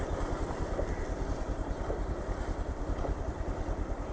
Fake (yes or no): yes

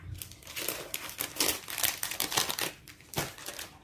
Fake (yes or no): no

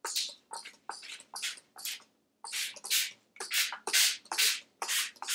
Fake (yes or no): yes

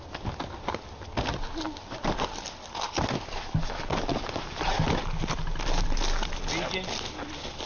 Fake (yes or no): no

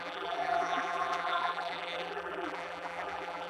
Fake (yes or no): yes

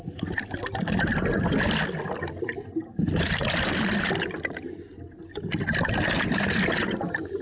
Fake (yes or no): no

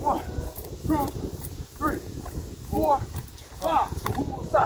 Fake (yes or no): yes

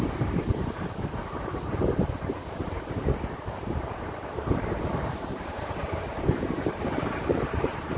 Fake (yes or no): yes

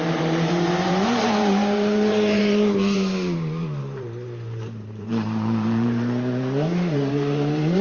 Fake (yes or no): yes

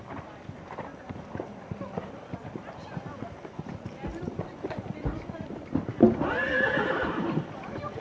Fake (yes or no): yes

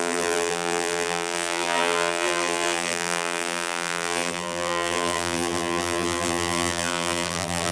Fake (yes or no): yes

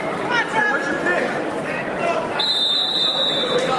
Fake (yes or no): no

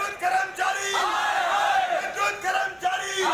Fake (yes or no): yes